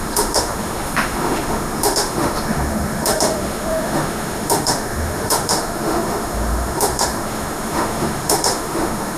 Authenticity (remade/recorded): remade